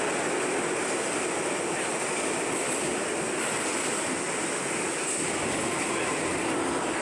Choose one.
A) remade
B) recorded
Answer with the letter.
B